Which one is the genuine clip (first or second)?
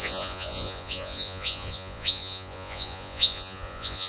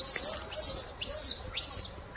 second